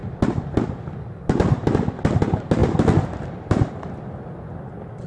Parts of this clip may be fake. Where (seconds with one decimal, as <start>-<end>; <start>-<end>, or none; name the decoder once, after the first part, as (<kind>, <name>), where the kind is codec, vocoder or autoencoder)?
none